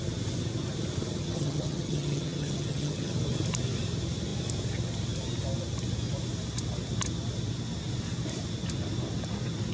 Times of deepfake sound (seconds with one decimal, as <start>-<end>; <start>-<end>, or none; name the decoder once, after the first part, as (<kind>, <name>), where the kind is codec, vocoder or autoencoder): 1.2-3.1 (vocoder, HiFi-GAN)